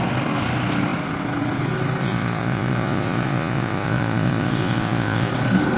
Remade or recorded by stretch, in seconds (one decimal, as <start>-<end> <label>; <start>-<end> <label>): 0.0-2.0 recorded; 2.0-5.3 remade; 5.3-5.8 recorded